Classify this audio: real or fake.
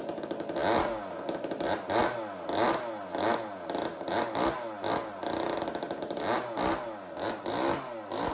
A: real